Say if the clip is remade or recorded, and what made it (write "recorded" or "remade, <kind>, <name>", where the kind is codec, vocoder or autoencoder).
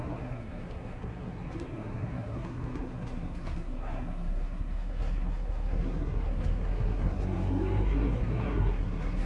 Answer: remade, codec, SNAC